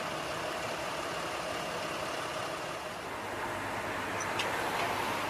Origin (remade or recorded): recorded